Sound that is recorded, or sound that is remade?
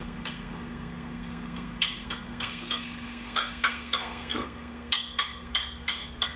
remade